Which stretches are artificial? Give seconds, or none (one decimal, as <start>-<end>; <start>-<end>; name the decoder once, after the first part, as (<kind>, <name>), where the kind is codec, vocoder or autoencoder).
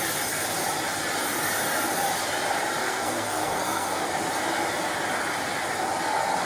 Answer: 2.8-4.0 (codec, SNAC)